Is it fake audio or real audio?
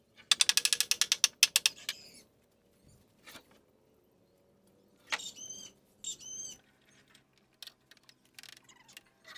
real